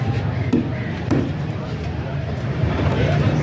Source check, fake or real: fake